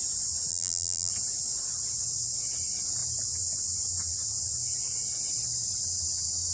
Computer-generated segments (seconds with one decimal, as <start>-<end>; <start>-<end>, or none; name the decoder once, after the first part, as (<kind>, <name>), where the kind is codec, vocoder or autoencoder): 0.5-1.1 (vocoder, BigVGAN v2)